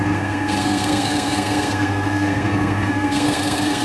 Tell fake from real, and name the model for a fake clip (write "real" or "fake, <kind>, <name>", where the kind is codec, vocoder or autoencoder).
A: fake, codec, SNAC